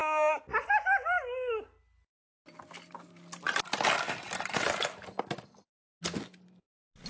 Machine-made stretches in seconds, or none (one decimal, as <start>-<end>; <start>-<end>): none